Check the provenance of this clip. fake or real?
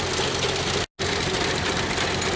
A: real